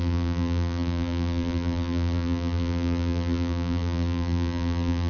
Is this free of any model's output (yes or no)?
no